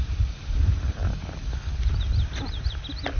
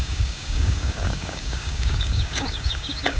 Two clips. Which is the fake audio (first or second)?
second